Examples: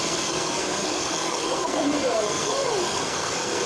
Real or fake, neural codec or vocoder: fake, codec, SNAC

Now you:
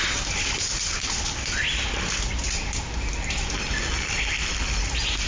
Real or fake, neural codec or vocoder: real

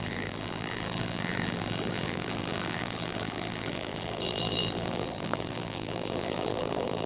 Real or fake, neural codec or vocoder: fake, vocoder, BigVGAN v2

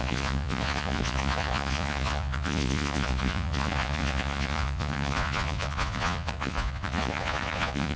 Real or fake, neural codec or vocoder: fake, vocoder, Vocos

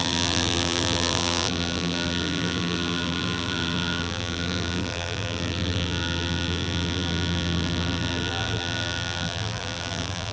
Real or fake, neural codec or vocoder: fake, vocoder, BigVGAN v2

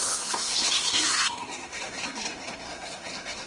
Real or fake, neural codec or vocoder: fake, codec, SNAC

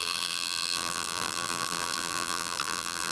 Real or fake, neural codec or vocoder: fake, vocoder, BigVGAN v2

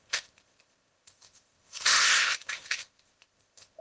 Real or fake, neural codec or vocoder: fake, codec, ZipCodec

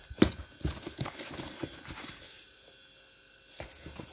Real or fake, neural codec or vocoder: real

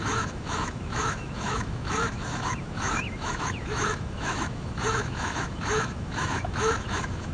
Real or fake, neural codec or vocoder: fake, autoencoder, DAC-VAE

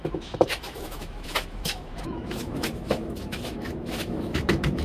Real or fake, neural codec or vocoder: fake, autoencoder, DAC-VAE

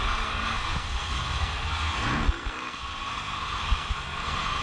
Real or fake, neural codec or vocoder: fake, codec, SNAC